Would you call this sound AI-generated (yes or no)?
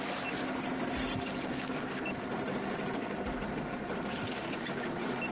no